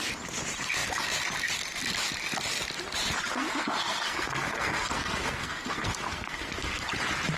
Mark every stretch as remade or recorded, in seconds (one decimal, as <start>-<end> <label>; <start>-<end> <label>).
0.0-3.3 recorded; 3.3-6.9 remade; 6.9-7.4 recorded